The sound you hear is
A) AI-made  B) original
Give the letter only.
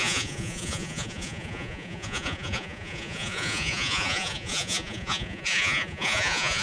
A